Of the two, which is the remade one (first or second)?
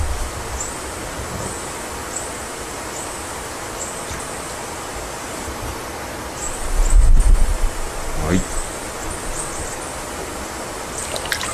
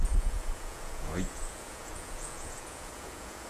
second